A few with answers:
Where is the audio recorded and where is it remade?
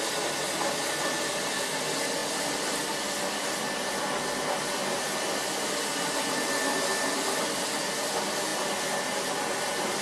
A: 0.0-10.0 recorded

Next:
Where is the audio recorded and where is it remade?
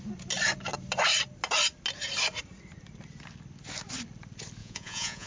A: 0.0-4.6 recorded; 4.6-5.3 remade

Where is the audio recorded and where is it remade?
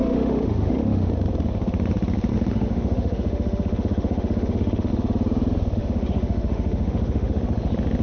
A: 0.0-1.1 remade; 1.1-2.3 recorded; 2.3-4.9 remade; 4.9-5.8 recorded; 5.8-7.4 remade; 7.4-8.0 recorded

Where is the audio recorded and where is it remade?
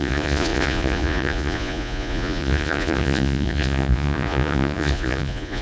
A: 0.0-5.6 remade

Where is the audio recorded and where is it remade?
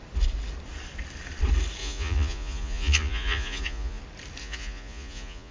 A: 0.0-1.8 recorded; 1.8-4.0 remade; 4.0-4.4 recorded; 4.4-5.5 remade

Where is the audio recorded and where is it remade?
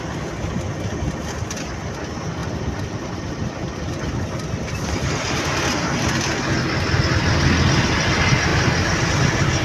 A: 0.0-2.4 recorded; 2.4-7.0 remade; 7.0-8.5 recorded; 8.5-9.1 remade; 9.1-9.6 recorded